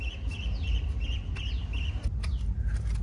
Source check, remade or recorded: recorded